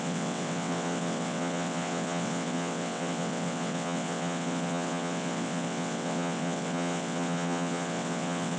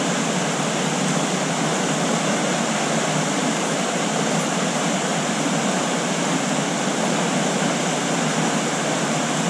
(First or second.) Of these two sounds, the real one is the second